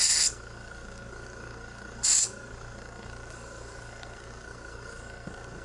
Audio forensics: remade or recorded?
remade